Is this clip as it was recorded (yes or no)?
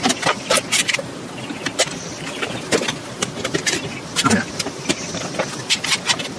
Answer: no